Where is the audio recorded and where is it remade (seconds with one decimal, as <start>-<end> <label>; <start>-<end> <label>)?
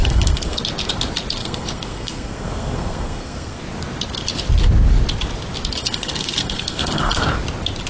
0.0-0.6 remade; 0.6-1.4 recorded; 1.4-3.6 remade; 3.6-5.8 recorded; 5.8-7.2 remade; 7.2-7.9 recorded